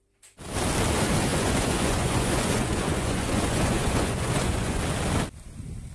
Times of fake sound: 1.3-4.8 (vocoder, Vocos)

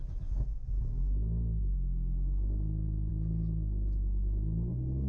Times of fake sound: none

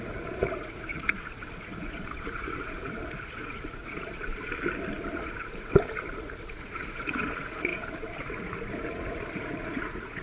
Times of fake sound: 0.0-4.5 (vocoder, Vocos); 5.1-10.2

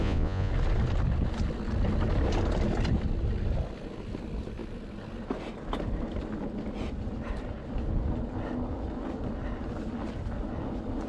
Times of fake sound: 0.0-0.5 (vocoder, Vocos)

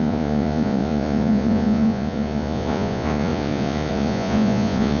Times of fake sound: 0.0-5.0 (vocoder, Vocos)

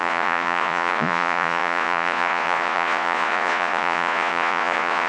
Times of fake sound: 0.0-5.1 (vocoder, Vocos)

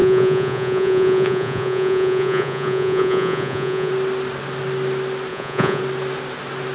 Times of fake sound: 0.0-3.9 (vocoder, Vocos); 5.3-5.8